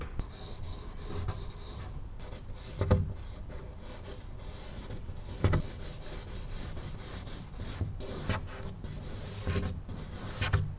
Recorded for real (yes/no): yes